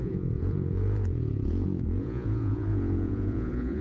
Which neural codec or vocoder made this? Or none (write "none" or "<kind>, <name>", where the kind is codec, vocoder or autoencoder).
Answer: vocoder, Vocos